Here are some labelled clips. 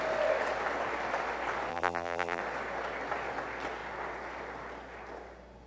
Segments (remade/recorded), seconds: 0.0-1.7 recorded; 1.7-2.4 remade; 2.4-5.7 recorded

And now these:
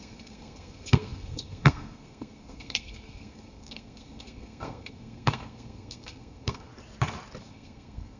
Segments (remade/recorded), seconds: 0.0-6.7 remade; 6.7-7.4 recorded; 7.4-8.2 remade

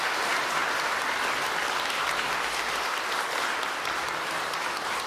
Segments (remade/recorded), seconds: 0.0-5.1 recorded

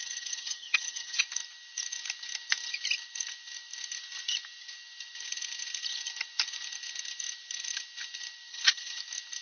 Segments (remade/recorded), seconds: 0.0-1.2 remade; 1.2-8.5 recorded; 8.5-9.0 remade; 9.0-9.4 recorded